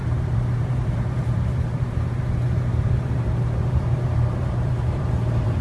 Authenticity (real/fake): fake